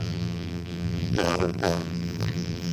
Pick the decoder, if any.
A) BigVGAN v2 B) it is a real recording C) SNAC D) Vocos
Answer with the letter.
A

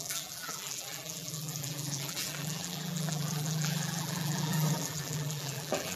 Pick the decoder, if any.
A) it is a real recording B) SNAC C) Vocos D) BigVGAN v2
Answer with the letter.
D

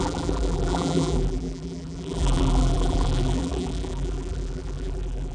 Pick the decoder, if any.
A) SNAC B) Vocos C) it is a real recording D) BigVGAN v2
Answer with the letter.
D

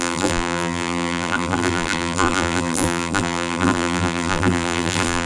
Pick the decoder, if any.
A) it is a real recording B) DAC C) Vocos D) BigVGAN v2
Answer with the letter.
D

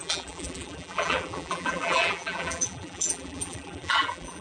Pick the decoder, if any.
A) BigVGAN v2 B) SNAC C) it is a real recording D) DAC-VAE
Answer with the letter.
A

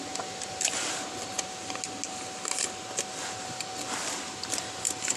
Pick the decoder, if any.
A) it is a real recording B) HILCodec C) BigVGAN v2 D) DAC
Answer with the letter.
A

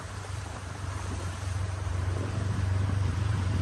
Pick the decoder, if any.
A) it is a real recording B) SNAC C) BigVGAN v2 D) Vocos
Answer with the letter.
C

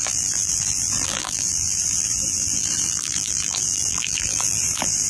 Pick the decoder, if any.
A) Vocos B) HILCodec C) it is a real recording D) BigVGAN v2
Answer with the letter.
D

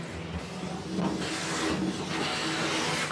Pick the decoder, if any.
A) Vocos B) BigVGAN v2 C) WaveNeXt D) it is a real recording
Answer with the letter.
D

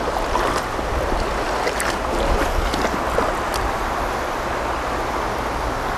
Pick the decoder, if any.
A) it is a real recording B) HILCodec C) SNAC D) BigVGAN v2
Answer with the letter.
A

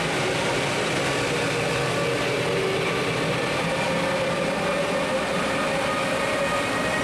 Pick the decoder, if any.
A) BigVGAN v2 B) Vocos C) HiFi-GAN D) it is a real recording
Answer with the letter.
D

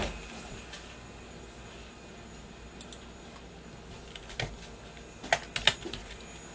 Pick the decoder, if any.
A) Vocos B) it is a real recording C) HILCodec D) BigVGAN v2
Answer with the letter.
B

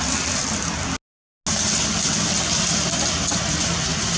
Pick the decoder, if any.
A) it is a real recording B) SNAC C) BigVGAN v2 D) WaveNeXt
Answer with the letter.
A